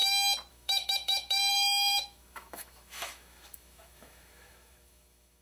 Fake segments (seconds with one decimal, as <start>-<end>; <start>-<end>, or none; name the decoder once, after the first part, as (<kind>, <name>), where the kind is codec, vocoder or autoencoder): 0.5-5.4 (autoencoder, DAC-VAE)